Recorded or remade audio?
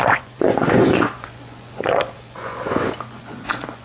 remade